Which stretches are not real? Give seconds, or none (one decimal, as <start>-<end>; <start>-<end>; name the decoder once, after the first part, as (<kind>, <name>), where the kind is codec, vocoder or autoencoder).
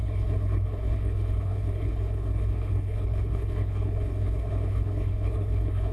0.0-5.9 (codec, HILCodec)